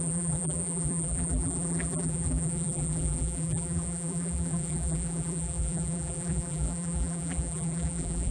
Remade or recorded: remade